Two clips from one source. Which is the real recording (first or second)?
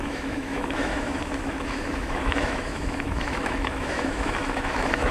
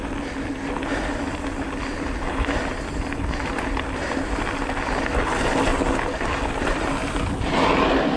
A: second